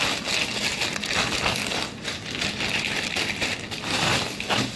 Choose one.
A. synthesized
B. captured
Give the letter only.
B